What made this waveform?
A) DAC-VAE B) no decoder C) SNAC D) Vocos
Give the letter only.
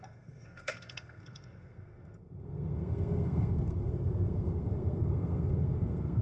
C